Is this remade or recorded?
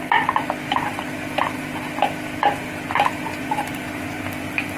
recorded